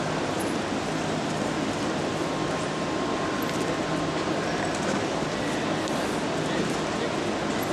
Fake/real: real